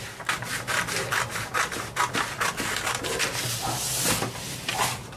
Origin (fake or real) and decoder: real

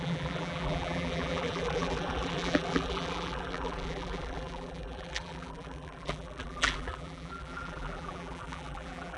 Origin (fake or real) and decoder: fake, vocoder, BigVGAN v2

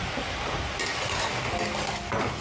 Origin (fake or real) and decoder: real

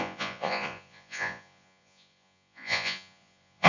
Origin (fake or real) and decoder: fake, vocoder, Vocos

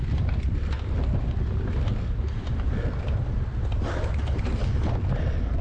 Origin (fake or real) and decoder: real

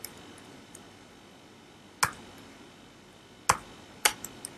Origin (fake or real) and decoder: real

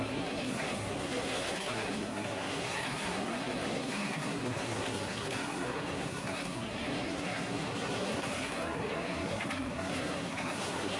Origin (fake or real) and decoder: fake, codec, SNAC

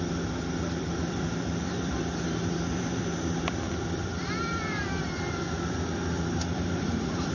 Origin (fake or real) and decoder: fake, vocoder, BigVGAN v2